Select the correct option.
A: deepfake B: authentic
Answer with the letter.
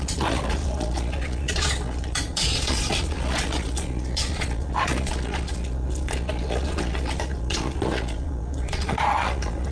A